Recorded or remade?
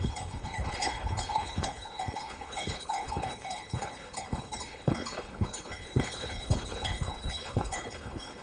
remade